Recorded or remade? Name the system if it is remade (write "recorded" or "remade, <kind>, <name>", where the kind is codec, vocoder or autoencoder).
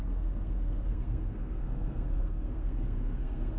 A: remade, codec, SNAC